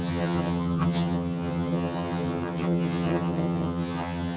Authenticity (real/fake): fake